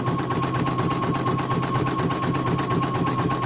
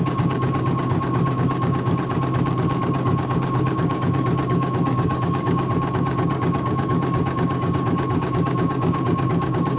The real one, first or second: first